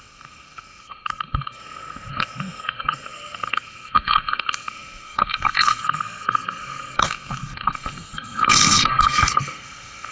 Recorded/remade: remade